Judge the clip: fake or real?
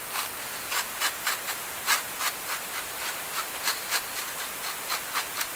real